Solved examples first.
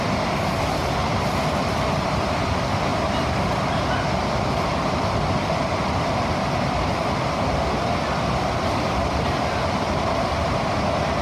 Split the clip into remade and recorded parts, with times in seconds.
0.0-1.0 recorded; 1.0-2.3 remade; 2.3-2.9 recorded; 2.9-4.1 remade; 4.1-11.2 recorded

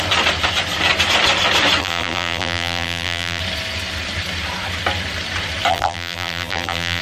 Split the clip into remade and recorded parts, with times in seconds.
0.0-1.8 recorded; 1.8-3.4 remade; 3.4-5.7 recorded; 5.7-7.0 remade

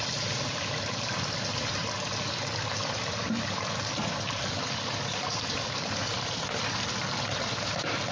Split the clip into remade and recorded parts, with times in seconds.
0.0-1.8 remade; 1.8-2.6 recorded; 2.6-8.1 remade